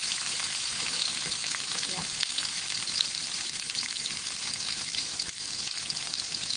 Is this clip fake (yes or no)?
yes